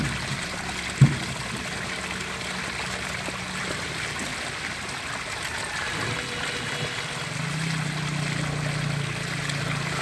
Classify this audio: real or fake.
real